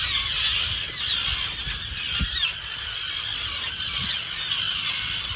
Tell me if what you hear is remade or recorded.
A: recorded